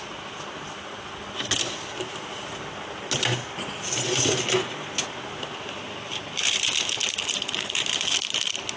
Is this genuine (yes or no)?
yes